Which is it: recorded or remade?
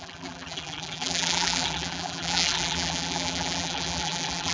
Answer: remade